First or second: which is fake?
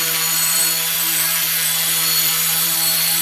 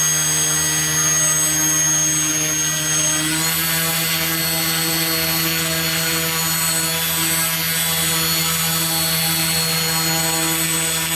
first